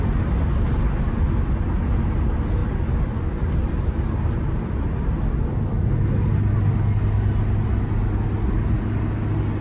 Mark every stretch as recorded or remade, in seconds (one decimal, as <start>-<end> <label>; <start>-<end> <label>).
0.0-2.6 recorded; 2.6-4.4 remade; 4.4-9.6 recorded